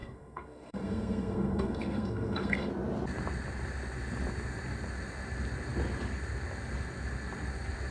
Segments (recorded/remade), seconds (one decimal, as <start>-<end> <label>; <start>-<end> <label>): 0.0-2.7 remade; 2.7-7.9 recorded